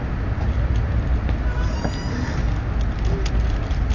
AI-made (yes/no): no